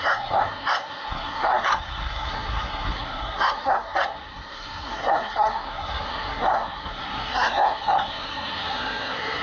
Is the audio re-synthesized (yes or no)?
yes